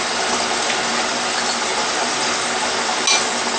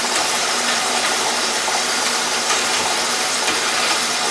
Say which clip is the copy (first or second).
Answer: second